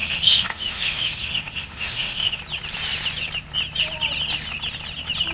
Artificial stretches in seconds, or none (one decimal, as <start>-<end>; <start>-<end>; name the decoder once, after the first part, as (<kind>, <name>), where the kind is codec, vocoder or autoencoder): 0.0-2.4 (autoencoder, DAC-VAE)